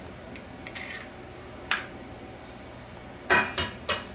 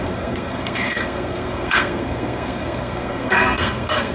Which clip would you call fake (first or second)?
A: second